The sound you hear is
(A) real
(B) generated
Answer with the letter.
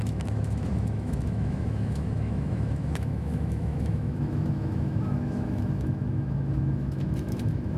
B